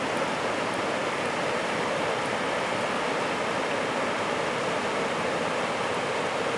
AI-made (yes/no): no